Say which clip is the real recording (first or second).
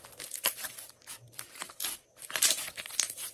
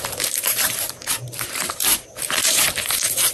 first